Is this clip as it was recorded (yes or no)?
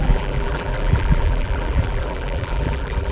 no